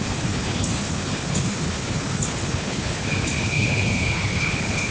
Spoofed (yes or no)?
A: yes